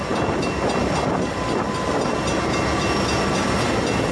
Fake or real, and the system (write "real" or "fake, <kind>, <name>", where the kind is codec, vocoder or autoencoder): real